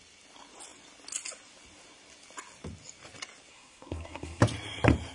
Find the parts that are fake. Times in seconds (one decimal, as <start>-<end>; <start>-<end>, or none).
3.5-4.4